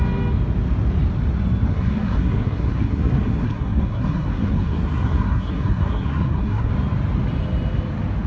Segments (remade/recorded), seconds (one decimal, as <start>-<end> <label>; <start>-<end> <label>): 0.0-1.7 recorded; 1.7-6.7 remade; 6.7-8.3 recorded

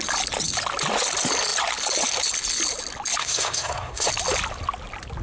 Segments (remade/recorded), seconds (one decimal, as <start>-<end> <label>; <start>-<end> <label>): 0.0-3.2 recorded; 3.2-4.1 remade; 4.1-5.2 recorded